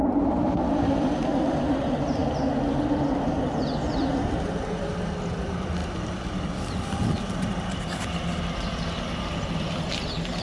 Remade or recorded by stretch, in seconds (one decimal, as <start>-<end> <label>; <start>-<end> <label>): 0.0-10.4 recorded